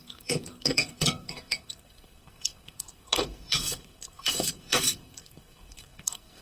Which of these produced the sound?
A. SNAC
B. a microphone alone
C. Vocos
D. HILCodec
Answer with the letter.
A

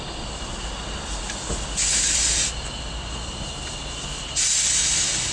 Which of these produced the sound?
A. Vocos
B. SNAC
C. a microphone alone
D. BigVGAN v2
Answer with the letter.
C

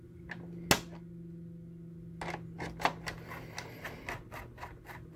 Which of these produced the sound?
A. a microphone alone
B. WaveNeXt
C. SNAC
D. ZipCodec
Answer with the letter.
A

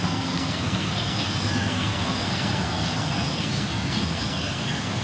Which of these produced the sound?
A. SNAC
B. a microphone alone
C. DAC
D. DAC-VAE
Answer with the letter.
A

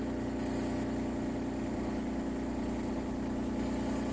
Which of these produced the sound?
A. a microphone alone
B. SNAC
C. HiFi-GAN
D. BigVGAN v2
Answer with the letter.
A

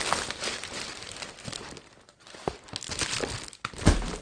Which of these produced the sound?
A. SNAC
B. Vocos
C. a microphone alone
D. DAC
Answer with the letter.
C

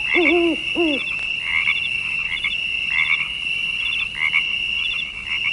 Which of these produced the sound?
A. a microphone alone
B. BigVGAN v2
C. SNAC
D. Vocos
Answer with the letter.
A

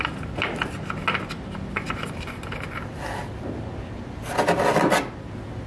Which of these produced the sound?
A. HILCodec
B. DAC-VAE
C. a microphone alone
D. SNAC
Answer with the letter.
C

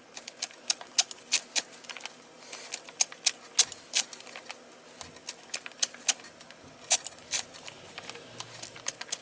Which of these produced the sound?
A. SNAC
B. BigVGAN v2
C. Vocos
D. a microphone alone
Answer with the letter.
D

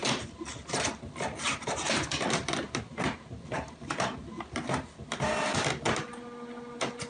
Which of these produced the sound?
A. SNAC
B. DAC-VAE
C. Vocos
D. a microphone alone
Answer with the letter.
D